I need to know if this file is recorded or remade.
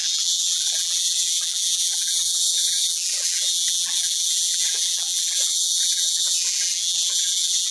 remade